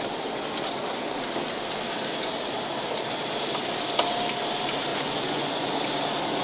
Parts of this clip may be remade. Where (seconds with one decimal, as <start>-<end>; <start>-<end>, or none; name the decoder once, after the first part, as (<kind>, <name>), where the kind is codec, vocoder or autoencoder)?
4.9-5.7 (vocoder, Vocos)